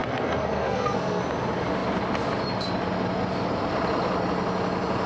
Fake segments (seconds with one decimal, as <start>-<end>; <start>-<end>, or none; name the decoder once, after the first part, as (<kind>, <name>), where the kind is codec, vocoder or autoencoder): 0.0-1.2 (codec, SNAC)